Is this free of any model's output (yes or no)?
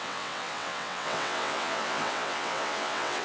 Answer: no